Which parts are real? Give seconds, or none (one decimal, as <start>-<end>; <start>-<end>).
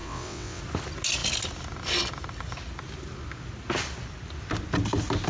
0.6-5.3